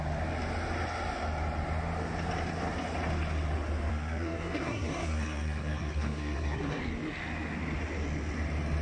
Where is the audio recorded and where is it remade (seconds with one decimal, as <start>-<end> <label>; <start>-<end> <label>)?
0.0-3.9 recorded; 3.9-6.8 remade; 6.8-8.8 recorded